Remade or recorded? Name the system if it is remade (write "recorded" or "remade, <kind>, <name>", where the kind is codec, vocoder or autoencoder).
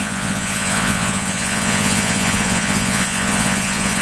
remade, vocoder, Vocos